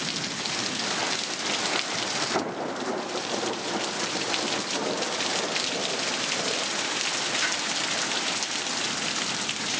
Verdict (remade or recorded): recorded